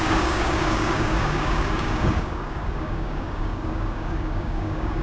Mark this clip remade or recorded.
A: remade